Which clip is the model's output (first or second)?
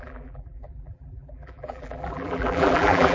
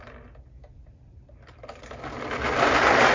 first